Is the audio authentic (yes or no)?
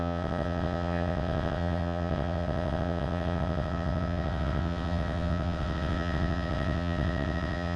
no